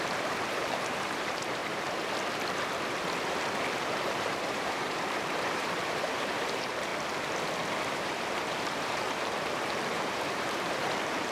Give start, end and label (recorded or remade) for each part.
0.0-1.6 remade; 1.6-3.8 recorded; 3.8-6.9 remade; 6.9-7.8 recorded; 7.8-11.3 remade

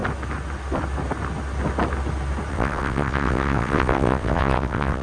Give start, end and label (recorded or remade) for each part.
0.0-2.5 recorded; 2.5-5.0 remade

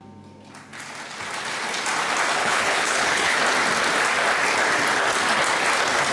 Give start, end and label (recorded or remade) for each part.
0.0-2.4 recorded; 2.4-3.4 remade; 3.4-6.1 recorded

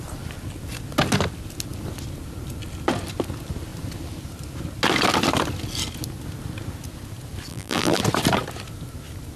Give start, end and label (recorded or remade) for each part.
0.0-7.5 recorded; 7.5-8.0 remade; 8.0-9.4 recorded

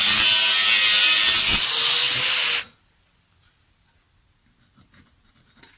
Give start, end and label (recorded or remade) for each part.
0.0-5.8 recorded

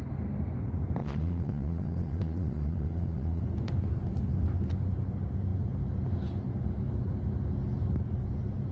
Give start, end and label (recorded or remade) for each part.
0.0-1.0 recorded; 1.0-3.4 remade; 3.4-8.7 recorded

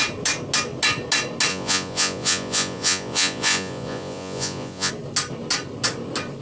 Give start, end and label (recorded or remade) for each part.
0.0-1.5 recorded; 1.5-4.9 remade; 4.9-6.4 recorded